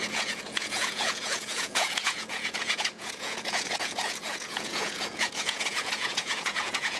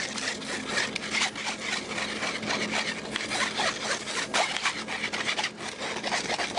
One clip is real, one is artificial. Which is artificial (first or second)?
first